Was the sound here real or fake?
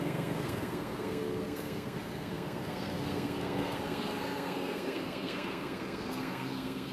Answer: fake